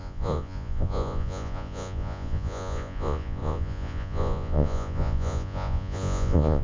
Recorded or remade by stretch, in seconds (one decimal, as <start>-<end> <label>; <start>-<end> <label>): 0.0-6.6 remade